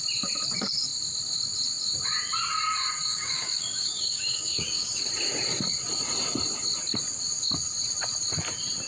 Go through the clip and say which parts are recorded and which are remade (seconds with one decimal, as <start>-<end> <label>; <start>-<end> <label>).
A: 0.0-3.1 recorded; 3.1-5.1 remade; 5.1-8.9 recorded

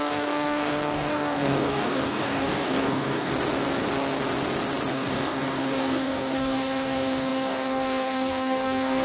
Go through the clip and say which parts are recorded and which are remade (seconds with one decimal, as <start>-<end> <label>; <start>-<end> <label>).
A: 0.0-3.3 remade; 3.3-4.9 recorded; 4.9-9.0 remade

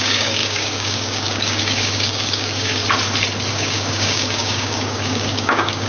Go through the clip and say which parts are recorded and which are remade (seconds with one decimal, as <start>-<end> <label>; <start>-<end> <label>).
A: 0.0-2.8 remade; 2.8-3.5 recorded; 3.5-5.9 remade

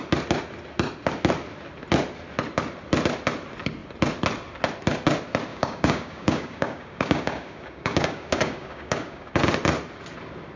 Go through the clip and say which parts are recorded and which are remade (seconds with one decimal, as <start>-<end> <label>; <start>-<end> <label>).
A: 0.0-5.5 recorded; 5.5-9.3 remade; 9.3-10.6 recorded

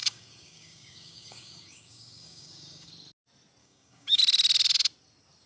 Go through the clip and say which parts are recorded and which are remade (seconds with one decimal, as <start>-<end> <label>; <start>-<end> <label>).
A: 0.0-2.9 remade; 2.9-3.6 recorded; 3.6-4.2 remade; 4.2-5.5 recorded